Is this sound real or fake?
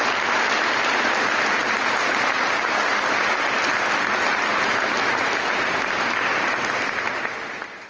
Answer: real